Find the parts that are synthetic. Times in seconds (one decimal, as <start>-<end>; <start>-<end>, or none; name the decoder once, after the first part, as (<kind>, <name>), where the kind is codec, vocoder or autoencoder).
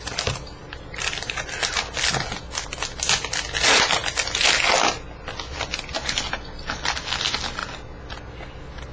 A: none